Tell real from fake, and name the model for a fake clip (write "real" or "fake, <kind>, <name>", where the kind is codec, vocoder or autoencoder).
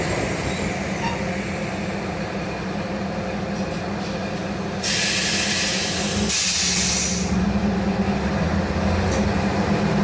real